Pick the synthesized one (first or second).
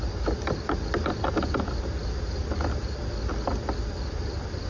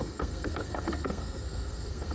second